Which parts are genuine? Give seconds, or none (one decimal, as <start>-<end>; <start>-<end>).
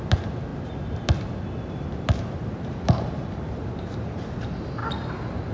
4.8-5.5